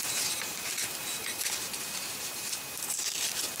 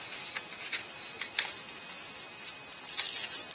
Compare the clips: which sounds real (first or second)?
second